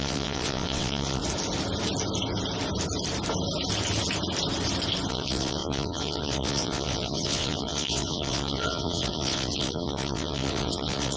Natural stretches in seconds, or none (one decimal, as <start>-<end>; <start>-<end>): 1.2-5.1